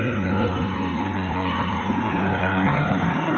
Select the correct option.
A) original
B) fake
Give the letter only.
B